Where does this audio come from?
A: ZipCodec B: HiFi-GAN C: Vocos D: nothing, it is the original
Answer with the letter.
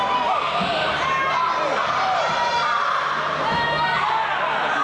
D